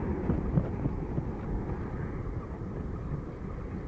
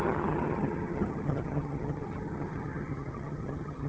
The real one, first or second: first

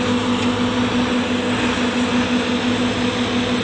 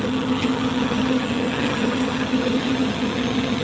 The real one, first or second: first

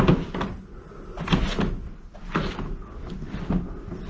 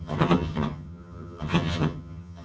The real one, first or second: first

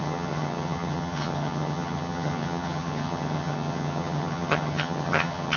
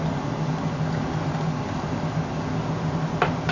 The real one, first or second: second